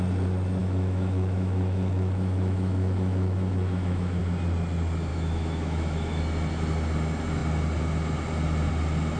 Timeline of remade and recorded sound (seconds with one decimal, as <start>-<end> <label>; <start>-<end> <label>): 0.0-0.6 recorded; 0.6-4.2 remade; 4.2-5.1 recorded; 5.1-6.2 remade; 6.2-9.2 recorded